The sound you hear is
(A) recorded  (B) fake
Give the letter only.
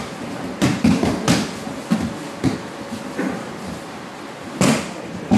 A